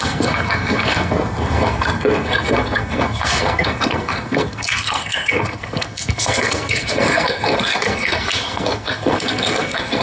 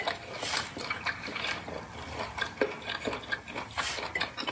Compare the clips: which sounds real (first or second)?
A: second